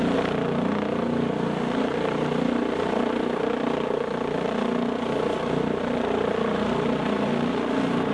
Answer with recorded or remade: recorded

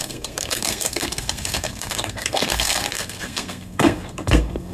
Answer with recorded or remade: remade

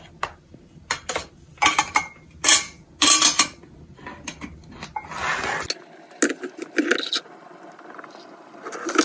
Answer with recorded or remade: recorded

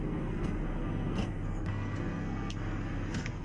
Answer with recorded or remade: remade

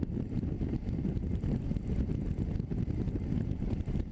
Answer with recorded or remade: recorded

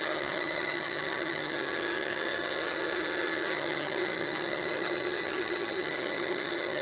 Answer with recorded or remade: remade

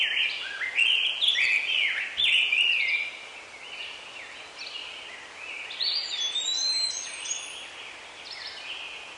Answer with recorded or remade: recorded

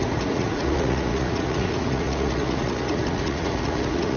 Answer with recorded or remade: remade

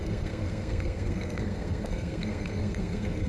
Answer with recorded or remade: remade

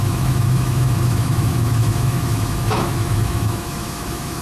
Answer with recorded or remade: remade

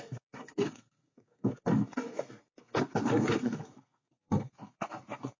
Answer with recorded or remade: remade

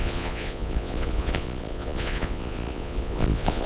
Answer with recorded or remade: remade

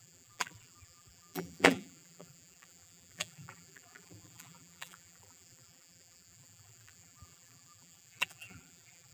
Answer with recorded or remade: remade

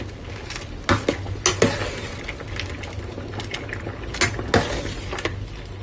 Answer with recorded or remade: recorded